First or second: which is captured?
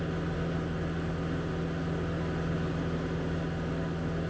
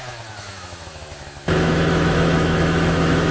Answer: first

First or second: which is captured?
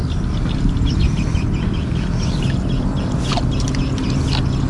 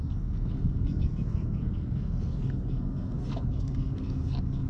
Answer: first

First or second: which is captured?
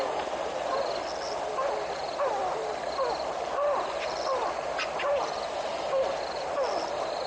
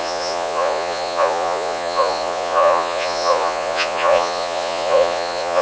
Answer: first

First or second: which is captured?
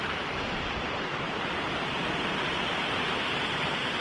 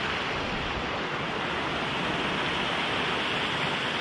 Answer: second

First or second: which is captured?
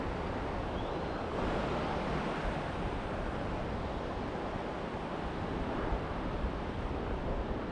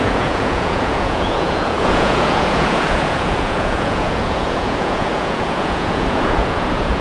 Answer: first